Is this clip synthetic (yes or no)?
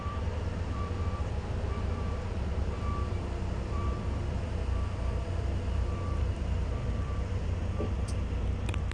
yes